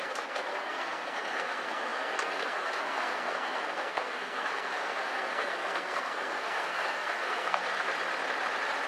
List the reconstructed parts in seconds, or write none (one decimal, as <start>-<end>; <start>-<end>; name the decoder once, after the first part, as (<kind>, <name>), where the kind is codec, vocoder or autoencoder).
0.0-7.9 (codec, SNAC)